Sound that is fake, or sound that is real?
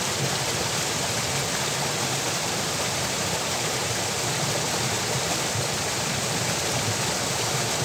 fake